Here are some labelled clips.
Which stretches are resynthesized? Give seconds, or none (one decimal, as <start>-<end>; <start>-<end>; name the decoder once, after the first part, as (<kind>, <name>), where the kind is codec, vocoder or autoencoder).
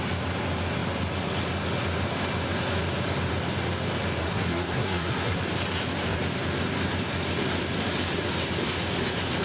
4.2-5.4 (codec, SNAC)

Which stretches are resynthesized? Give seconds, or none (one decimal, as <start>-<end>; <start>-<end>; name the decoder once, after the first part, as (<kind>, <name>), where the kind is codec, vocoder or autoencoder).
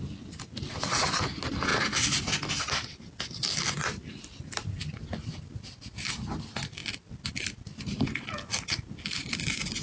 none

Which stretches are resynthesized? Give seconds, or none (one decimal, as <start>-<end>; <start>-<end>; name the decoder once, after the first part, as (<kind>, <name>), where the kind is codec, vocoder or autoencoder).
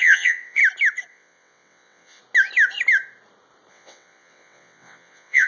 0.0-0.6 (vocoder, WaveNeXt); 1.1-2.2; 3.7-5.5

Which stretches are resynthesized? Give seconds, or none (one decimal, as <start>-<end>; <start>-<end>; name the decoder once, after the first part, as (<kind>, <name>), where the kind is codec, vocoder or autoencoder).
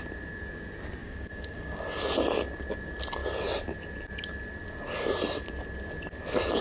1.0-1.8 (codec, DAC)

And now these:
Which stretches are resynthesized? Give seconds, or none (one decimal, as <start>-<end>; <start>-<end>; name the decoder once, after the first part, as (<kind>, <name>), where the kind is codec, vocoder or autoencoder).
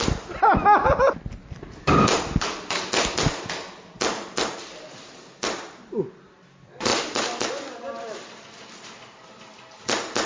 none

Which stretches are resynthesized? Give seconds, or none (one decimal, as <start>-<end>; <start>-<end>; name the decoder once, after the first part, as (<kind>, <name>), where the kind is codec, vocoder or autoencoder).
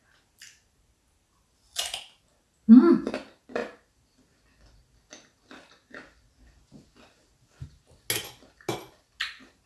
none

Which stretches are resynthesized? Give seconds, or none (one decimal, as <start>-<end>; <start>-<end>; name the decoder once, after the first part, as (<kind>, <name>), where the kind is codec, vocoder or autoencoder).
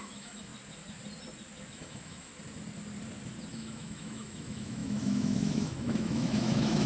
0.0-0.5 (autoencoder, DAC-VAE); 1.7-2.3; 3.5-6.9